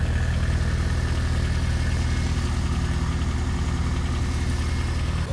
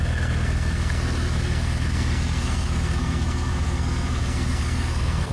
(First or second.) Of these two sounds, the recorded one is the first